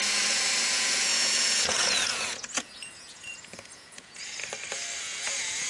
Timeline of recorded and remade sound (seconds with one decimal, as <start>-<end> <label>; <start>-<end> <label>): 0.0-4.4 remade; 4.4-5.0 recorded; 5.0-5.7 remade